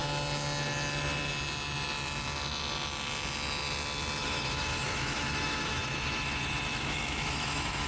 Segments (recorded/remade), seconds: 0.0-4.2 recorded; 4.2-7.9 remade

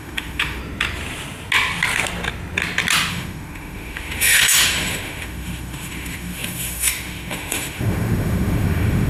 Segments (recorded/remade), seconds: 0.0-0.6 remade; 0.6-3.1 recorded; 3.1-9.1 remade

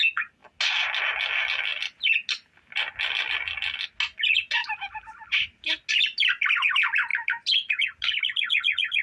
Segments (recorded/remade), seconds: 0.0-9.0 recorded

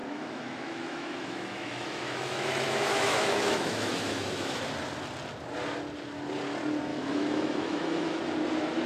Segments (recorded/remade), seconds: 0.0-4.6 remade; 4.6-6.9 recorded; 6.9-8.2 remade; 8.2-8.9 recorded

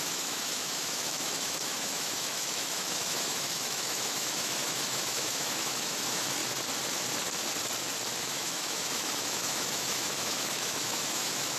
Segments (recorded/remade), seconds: 0.0-6.4 remade; 6.4-8.2 recorded; 8.2-11.6 remade

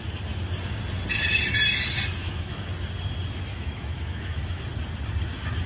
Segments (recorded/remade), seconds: 0.0-2.2 recorded; 2.2-2.7 remade; 2.7-3.5 recorded; 3.5-4.6 remade; 4.6-5.7 recorded

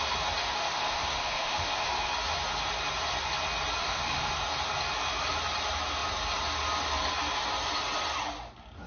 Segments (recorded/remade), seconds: 0.0-0.4 recorded; 0.4-2.1 remade; 2.1-3.8 recorded; 3.8-4.3 remade; 4.3-8.9 recorded